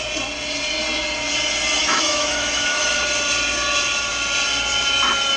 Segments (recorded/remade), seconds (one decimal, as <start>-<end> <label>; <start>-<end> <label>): 0.0-1.8 recorded; 1.8-3.0 remade; 3.0-5.4 recorded